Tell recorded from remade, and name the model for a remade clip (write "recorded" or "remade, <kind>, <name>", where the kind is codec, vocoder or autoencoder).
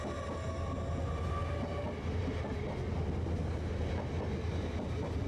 recorded